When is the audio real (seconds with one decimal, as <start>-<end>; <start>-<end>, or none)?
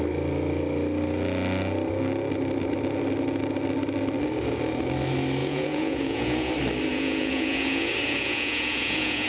0.0-5.4; 6.5-6.9